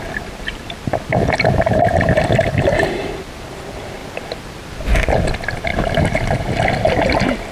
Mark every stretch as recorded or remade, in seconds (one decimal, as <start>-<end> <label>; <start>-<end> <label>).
0.0-5.7 recorded; 5.7-6.3 remade; 6.3-7.5 recorded